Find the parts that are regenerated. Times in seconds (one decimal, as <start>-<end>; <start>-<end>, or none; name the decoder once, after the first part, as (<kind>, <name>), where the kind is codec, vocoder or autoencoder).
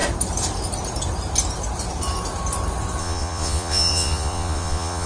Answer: 3.0-5.1 (vocoder, Vocos)